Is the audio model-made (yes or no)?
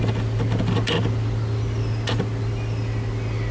no